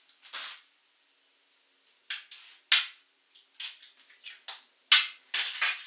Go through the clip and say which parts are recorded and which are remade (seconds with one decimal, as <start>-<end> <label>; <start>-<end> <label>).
0.0-5.9 recorded